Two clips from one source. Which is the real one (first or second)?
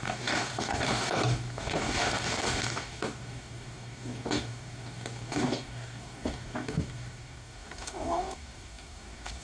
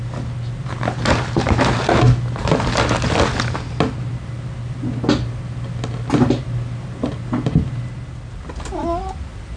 second